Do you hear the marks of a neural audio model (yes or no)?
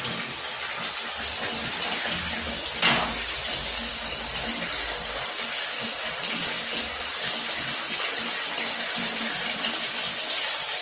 no